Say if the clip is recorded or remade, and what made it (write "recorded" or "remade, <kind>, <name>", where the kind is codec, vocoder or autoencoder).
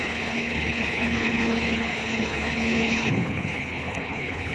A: remade, codec, HILCodec